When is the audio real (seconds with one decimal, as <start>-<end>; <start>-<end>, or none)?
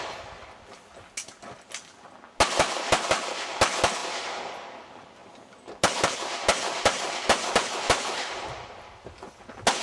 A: 0.0-9.8